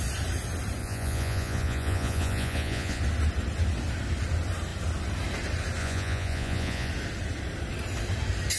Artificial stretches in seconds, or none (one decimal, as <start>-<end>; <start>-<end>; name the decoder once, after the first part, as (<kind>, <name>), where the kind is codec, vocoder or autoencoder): 0.8-3.0 (vocoder, Vocos); 5.8-6.9